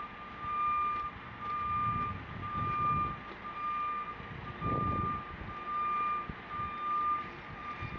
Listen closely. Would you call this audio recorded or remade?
recorded